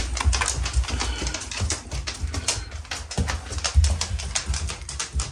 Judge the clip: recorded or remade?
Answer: recorded